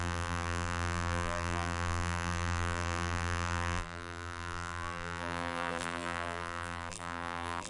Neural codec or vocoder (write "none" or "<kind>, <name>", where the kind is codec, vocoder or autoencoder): vocoder, BigVGAN v2